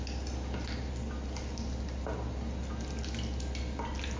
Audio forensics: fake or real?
real